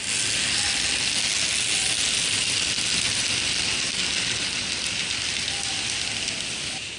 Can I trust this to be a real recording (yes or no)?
yes